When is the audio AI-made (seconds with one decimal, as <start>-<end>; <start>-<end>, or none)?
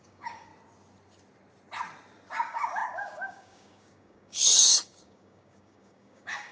0.0-0.5; 2.3-6.5